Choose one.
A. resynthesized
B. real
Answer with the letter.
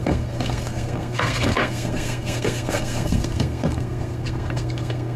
A